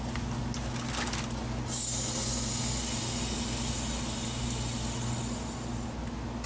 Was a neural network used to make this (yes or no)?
no